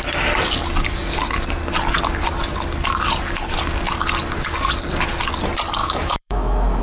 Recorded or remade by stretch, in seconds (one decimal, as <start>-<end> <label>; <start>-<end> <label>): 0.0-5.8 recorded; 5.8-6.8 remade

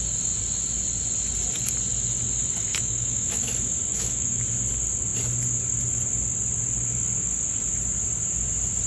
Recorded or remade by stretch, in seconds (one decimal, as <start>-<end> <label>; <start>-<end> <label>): 0.0-2.7 recorded; 2.7-3.5 remade; 3.5-3.9 recorded; 3.9-4.4 remade; 4.4-8.9 recorded

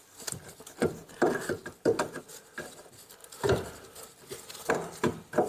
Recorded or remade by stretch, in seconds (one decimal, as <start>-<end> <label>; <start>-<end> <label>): 0.0-5.5 recorded